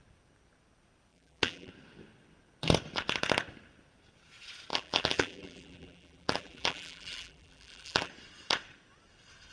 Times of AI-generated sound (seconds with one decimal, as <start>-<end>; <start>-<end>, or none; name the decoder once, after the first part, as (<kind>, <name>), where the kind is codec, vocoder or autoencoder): 1.1-1.7 (vocoder, BigVGAN v2); 4.7-8.1